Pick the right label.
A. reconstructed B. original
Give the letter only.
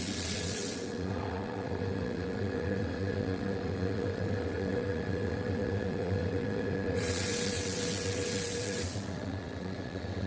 A